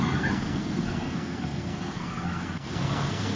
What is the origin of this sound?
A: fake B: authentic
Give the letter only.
A